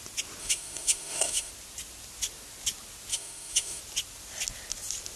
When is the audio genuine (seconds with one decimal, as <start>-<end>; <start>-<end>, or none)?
0.0-0.4; 1.5-3.1; 3.8-5.2